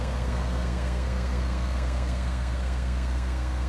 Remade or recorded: remade